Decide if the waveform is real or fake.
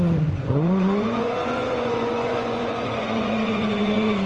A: fake